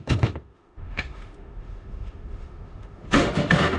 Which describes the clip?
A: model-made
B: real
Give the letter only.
A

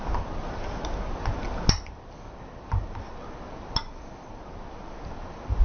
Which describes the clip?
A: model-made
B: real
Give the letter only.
B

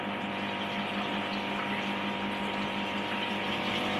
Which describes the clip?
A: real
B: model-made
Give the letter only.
A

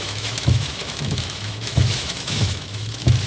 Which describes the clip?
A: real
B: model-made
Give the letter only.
B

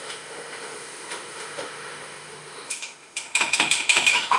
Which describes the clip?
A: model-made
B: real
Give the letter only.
A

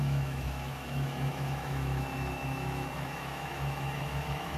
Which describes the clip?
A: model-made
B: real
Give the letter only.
A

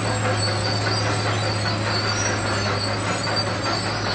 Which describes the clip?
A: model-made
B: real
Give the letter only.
B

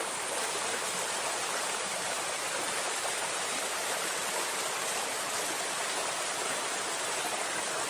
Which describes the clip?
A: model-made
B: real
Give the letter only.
B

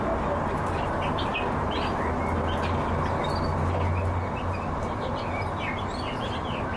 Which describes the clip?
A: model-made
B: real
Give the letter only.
B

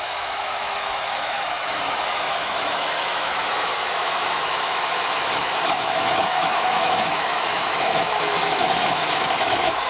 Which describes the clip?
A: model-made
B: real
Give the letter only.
A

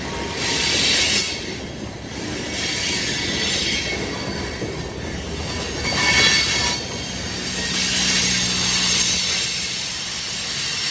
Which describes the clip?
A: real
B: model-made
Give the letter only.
A